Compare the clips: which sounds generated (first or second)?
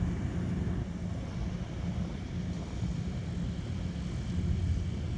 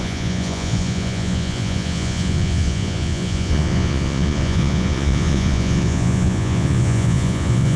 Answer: second